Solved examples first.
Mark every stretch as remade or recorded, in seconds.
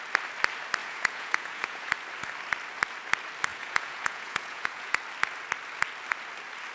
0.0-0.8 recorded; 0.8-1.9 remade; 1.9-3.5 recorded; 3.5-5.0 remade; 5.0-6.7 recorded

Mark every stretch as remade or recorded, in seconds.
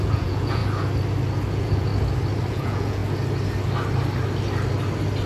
0.0-0.6 remade; 0.6-1.5 recorded; 1.5-1.9 remade; 1.9-2.5 recorded; 2.5-3.0 remade; 3.0-5.3 recorded